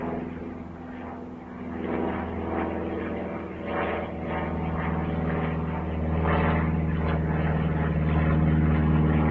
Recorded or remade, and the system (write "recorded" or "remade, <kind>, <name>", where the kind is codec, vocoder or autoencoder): recorded